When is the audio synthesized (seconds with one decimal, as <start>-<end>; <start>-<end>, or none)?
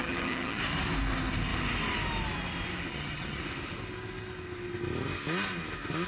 0.0-0.6; 2.9-3.4